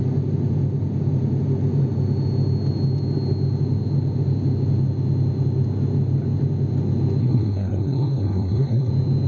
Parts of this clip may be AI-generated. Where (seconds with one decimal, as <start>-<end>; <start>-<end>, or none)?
7.2-8.9